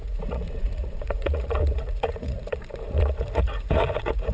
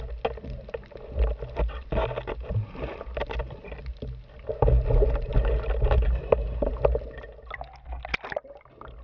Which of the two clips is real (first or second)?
second